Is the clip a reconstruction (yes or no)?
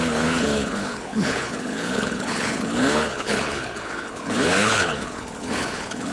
yes